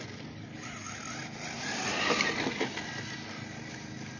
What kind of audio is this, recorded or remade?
recorded